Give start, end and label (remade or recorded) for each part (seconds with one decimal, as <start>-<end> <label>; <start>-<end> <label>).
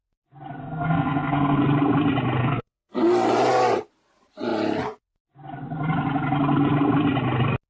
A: 0.0-0.6 recorded; 0.6-1.6 remade; 1.6-2.4 recorded; 2.4-2.9 remade; 2.9-7.7 recorded